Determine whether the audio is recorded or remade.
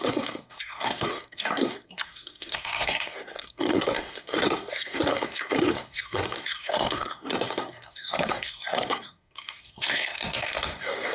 remade